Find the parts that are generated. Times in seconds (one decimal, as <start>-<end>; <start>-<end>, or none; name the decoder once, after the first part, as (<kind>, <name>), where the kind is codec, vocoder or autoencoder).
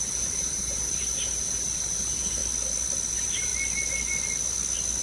0.0-2.4 (vocoder, BigVGAN v2); 3.1-3.5